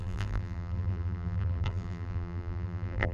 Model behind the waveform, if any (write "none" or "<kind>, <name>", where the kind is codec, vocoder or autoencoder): vocoder, BigVGAN v2